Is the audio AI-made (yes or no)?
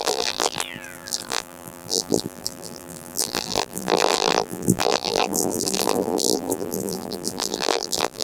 yes